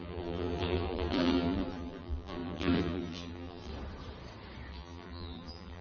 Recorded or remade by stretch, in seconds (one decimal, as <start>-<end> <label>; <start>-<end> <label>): 0.0-3.7 remade; 3.7-4.7 recorded; 4.7-5.8 remade